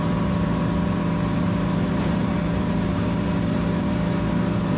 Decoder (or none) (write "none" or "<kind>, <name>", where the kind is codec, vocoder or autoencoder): vocoder, BigVGAN v2